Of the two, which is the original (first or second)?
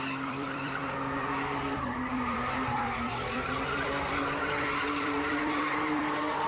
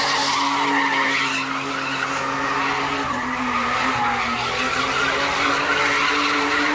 second